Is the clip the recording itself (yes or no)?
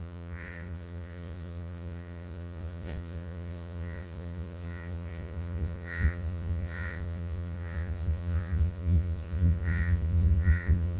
no